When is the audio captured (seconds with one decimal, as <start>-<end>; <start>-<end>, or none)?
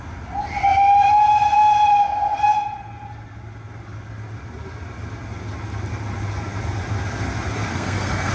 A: 0.0-7.7